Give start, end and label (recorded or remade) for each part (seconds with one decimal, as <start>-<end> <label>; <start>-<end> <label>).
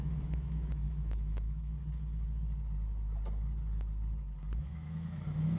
0.0-1.7 remade; 1.7-4.6 recorded; 4.6-5.6 remade